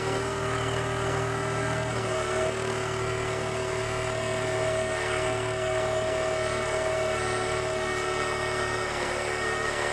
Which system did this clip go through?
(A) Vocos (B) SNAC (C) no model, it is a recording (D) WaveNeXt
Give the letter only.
B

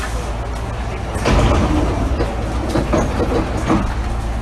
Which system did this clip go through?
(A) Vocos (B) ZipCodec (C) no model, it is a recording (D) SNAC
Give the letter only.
C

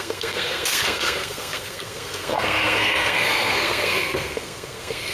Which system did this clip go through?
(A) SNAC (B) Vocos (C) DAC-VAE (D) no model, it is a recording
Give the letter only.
A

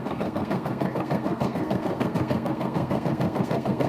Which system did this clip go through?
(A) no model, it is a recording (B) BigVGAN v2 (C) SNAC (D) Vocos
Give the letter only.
C